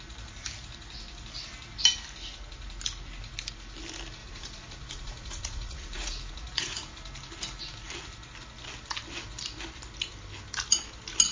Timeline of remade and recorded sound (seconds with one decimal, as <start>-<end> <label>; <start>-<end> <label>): 0.0-4.2 recorded; 4.2-6.9 remade; 6.9-11.3 recorded